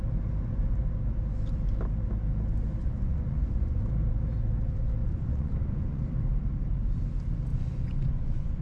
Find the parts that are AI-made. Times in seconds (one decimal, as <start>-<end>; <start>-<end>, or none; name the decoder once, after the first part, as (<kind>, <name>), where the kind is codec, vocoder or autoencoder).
2.8-3.8 (vocoder, Vocos); 5.0-6.1; 7.5-8.6